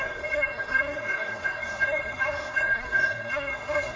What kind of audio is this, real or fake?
fake